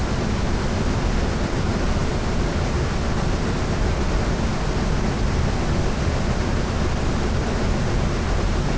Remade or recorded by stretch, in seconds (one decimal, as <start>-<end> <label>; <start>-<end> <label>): 0.0-8.8 recorded